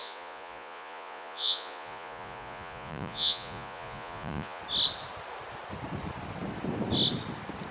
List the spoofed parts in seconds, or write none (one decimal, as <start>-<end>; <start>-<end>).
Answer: 0.0-4.6

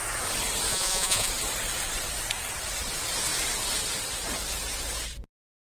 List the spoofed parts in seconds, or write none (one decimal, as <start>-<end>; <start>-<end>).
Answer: 0.7-1.3

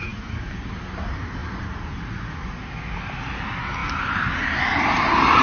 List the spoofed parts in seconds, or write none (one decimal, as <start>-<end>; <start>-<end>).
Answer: none

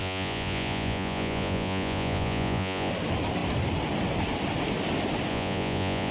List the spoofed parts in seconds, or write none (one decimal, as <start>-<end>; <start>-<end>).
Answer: 0.0-2.9; 5.3-6.1

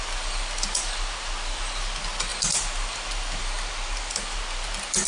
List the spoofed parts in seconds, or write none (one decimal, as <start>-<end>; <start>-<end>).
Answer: none

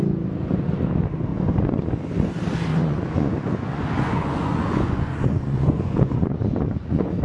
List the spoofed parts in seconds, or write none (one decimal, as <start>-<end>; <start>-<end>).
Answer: 1.3-1.9; 2.7-7.2